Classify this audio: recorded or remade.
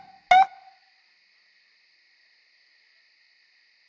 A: recorded